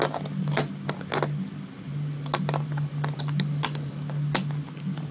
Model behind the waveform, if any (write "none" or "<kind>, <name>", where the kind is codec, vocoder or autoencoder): none